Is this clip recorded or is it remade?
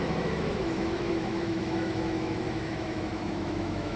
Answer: remade